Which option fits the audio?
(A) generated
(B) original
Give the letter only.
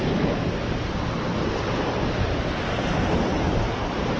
B